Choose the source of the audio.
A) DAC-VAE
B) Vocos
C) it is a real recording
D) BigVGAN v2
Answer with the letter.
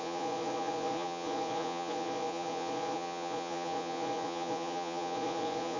B